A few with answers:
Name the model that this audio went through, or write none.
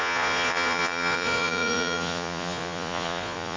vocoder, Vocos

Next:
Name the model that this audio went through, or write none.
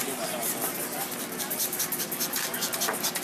none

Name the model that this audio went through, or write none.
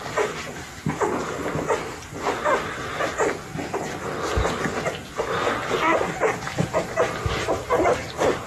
none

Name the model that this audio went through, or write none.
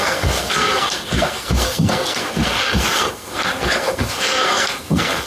codec, SNAC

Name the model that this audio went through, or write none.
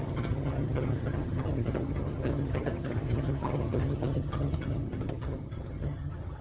vocoder, HiFi-GAN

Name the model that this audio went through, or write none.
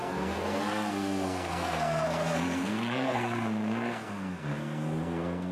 codec, SNAC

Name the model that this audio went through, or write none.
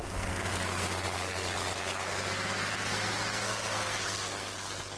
codec, SNAC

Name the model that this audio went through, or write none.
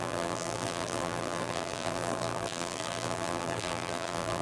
vocoder, BigVGAN v2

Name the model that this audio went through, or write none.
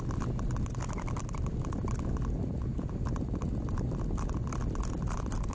none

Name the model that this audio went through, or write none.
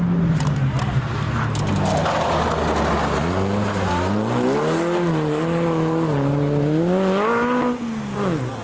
none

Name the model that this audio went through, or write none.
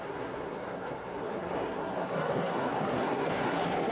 codec, SNAC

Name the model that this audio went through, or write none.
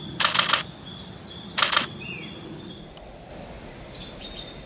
none